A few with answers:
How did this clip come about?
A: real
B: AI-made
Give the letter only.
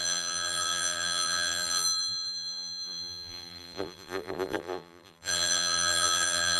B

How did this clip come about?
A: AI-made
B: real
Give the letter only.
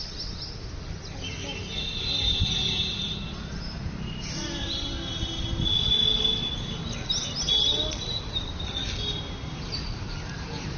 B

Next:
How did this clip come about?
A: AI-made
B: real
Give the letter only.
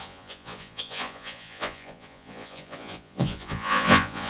A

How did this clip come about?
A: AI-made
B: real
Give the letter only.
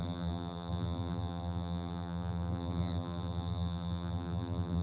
A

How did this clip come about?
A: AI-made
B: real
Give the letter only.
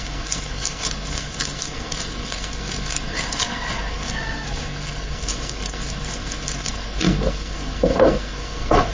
A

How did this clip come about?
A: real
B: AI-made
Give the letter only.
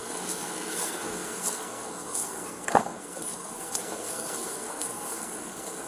B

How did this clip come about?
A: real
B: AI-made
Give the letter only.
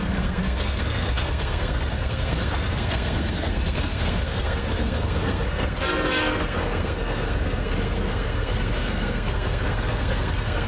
B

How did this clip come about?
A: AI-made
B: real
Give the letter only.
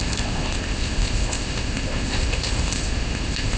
A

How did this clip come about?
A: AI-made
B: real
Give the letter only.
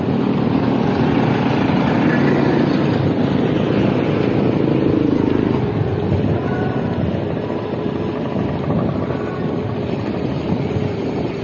B